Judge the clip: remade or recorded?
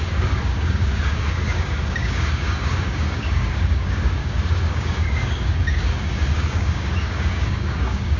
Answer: remade